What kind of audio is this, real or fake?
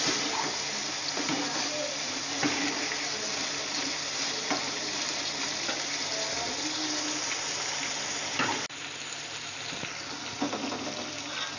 real